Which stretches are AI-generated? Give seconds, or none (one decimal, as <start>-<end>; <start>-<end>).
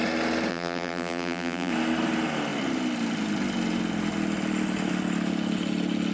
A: 0.5-1.7